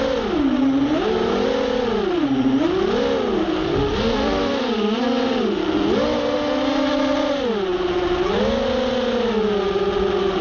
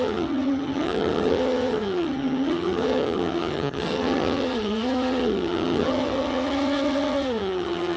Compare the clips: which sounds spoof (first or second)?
second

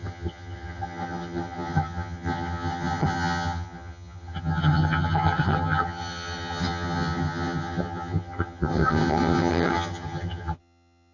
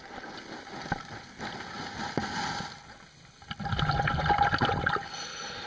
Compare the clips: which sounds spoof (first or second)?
first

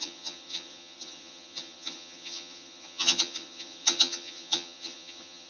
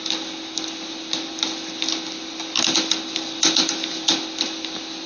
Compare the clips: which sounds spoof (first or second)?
first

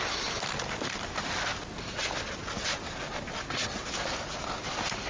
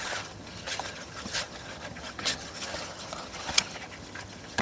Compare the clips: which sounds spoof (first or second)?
second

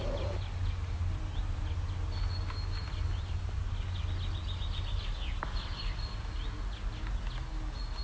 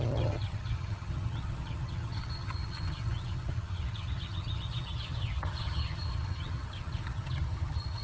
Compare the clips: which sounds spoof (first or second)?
second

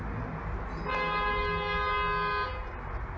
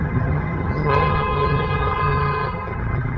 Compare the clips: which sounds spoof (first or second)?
second